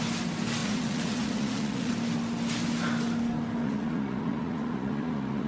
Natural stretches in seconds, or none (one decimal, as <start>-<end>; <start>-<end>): 0.0-0.6; 1.9-3.6